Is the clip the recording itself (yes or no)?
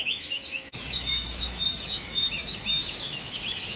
no